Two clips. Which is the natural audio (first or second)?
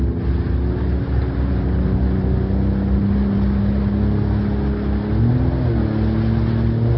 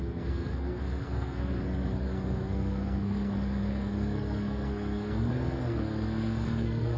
first